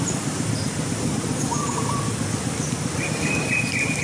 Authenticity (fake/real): real